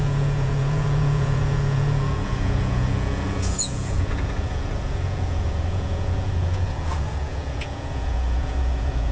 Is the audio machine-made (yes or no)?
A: yes